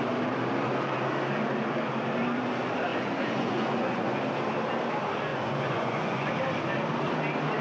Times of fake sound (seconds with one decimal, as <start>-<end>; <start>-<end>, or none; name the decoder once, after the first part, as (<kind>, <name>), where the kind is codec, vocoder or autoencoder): 2.9-4.2 (vocoder, Vocos); 5.3-6.3